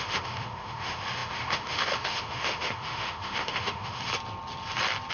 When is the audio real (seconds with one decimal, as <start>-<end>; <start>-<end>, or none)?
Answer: 4.1-5.1